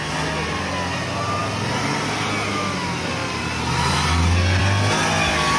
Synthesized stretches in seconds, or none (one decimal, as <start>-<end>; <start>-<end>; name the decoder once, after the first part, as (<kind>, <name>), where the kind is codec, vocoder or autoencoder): none